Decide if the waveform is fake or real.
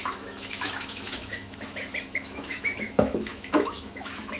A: fake